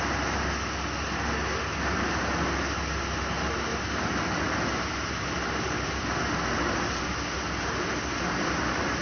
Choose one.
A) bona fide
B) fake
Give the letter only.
A